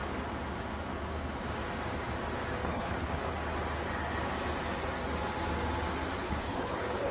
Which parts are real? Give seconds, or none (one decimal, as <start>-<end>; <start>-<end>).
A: 0.0-2.6; 3.3-6.2